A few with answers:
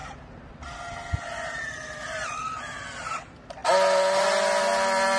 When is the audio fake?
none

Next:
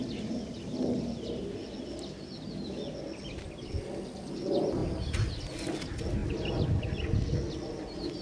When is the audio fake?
none